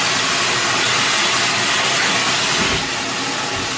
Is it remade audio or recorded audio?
recorded